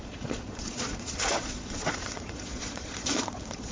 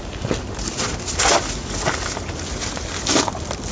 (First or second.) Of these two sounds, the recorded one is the second